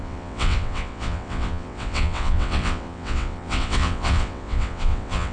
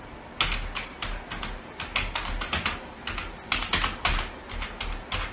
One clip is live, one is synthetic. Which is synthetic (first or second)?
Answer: first